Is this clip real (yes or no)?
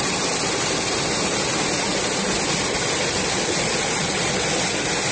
yes